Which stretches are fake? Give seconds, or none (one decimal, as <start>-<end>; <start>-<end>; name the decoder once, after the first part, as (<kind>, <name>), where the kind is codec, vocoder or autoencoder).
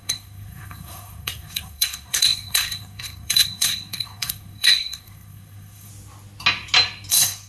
0.0-5.9 (codec, SNAC); 7.1-7.5